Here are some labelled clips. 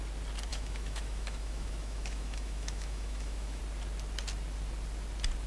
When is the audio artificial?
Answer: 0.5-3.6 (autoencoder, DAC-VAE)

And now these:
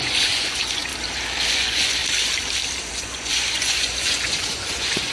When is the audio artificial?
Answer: 0.0-0.9 (vocoder, Vocos); 1.5-2.0; 2.9-5.1

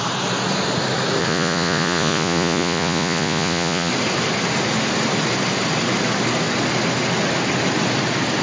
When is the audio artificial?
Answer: 1.2-3.9 (vocoder, Vocos)

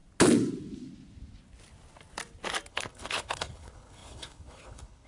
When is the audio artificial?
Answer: 2.7-5.1 (codec, HILCodec)

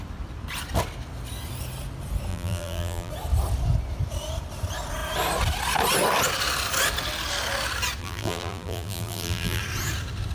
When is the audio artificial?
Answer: 2.3-3.1 (vocoder, BigVGAN v2); 8.0-9.6

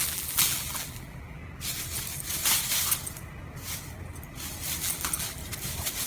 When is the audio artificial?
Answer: 0.0-1.4 (vocoder, BigVGAN v2); 4.8-5.4